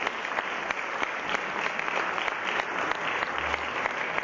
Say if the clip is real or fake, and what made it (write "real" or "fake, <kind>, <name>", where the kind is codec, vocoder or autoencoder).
real